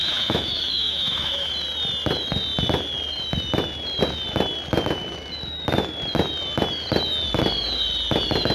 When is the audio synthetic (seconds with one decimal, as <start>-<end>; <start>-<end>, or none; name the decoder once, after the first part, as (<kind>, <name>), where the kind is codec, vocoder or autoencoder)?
0.0-1.5 (autoencoder, DAC-VAE)